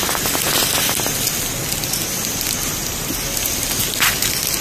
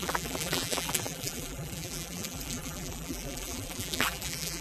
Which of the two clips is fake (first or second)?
second